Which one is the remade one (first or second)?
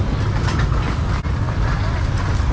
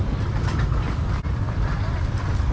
second